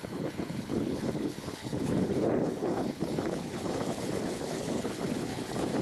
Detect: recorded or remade remade